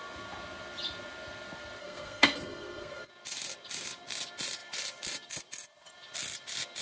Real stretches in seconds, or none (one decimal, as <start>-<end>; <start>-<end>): 0.0-1.8; 3.1-6.8